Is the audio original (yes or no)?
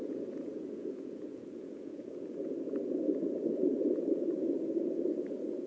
no